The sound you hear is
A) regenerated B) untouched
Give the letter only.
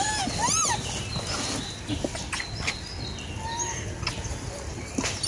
B